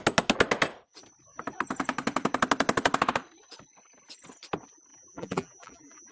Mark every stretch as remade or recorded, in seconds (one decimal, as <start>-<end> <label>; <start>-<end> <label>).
0.0-4.9 recorded; 4.9-6.1 remade